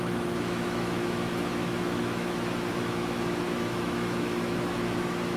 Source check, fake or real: fake